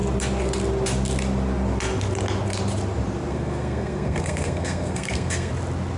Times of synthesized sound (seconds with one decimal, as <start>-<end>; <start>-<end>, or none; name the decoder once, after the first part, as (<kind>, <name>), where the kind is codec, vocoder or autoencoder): 3.3-5.5 (codec, SNAC)